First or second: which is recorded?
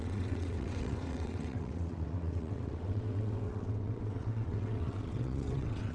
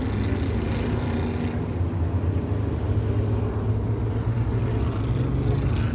second